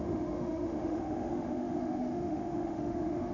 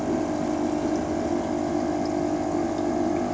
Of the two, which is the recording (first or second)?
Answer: second